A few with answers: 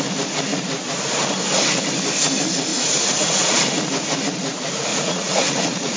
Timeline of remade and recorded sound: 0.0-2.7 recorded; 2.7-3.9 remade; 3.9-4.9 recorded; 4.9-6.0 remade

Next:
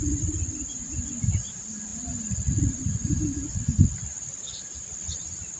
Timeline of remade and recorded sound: 0.0-5.6 recorded

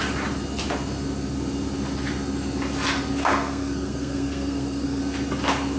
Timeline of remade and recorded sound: 0.0-3.2 recorded; 3.2-5.0 remade; 5.0-5.8 recorded

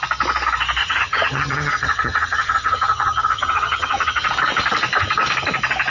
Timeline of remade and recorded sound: 0.0-0.8 recorded; 0.8-4.3 remade; 4.3-5.9 recorded

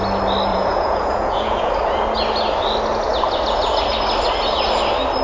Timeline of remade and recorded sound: 0.0-0.5 recorded; 0.5-1.7 remade; 1.7-5.2 recorded

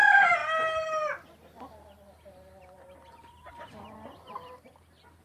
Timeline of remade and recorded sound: 0.0-0.4 recorded; 0.4-3.5 remade; 3.5-5.2 recorded